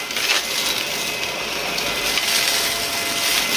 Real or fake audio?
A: real